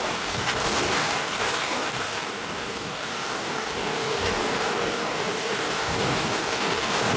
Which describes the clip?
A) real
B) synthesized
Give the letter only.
B